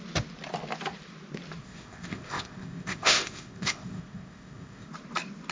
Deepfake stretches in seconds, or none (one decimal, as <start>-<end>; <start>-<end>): 1.6-4.9